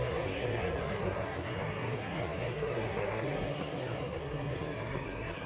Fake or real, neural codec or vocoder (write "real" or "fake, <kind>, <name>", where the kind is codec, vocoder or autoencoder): fake, codec, SNAC